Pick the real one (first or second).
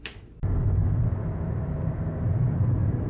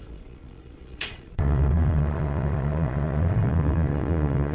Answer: first